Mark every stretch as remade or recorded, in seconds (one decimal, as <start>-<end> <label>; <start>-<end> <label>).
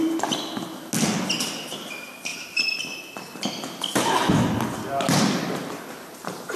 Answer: 0.0-6.6 recorded